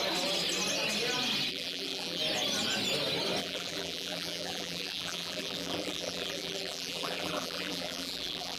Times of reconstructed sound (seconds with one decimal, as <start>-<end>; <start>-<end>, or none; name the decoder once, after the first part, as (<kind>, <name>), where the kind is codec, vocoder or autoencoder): 1.5-2.2 (vocoder, BigVGAN v2); 3.4-8.6